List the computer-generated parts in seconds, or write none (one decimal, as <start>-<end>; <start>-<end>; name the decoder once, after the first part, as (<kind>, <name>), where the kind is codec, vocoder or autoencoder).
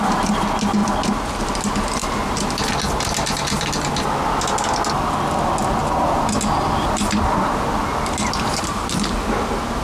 none